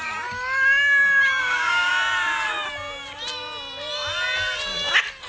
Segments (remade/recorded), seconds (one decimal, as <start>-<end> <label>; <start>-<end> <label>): 0.0-1.4 recorded; 1.4-1.9 remade; 1.9-5.3 recorded